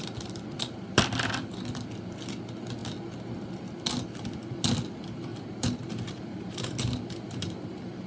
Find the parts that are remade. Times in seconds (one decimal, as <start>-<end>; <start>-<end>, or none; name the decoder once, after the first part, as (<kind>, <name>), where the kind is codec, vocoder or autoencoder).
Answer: 5.3-8.1 (vocoder, BigVGAN v2)